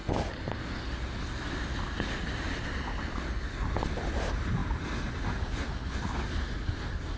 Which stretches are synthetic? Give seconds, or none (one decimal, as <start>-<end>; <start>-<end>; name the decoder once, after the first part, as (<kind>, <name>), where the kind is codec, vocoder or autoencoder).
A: none